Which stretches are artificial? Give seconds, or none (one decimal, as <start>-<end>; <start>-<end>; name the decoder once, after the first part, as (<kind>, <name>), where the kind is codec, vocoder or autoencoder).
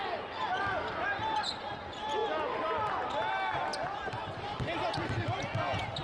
none